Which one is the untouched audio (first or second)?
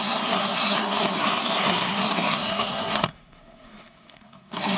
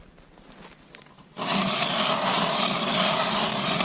second